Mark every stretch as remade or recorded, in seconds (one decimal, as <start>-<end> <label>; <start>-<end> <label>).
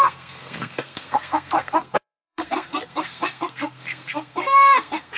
0.0-5.2 remade